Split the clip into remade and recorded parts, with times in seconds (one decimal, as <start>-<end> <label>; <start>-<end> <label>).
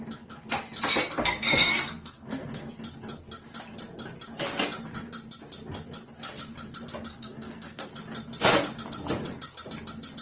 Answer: 0.0-1.2 recorded; 1.2-2.7 remade; 2.7-7.1 recorded; 7.1-7.9 remade; 7.9-10.2 recorded